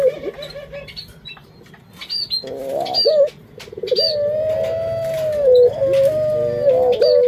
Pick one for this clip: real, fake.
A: real